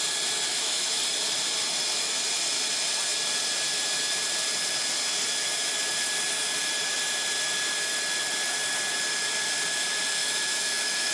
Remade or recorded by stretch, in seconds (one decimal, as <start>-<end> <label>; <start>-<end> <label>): 0.0-0.5 recorded; 0.5-1.0 remade; 1.0-10.2 recorded; 10.2-11.1 remade